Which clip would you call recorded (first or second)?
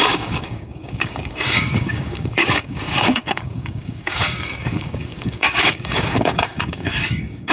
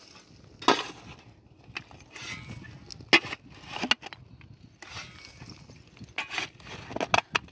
second